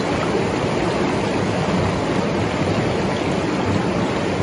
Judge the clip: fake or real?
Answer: real